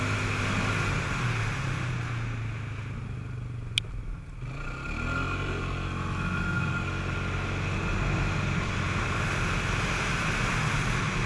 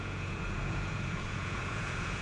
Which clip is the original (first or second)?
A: first